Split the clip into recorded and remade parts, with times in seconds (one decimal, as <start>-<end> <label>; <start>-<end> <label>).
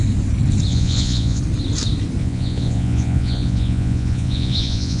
0.0-0.7 recorded; 0.7-1.4 remade; 1.4-2.2 recorded; 2.2-5.0 remade